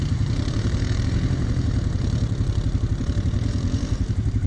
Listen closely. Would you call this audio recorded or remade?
remade